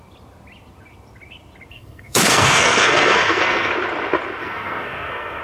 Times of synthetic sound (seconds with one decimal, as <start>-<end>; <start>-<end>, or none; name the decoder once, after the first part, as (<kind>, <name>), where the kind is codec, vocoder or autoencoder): 1.7-3.7 (codec, SNAC); 4.4-5.4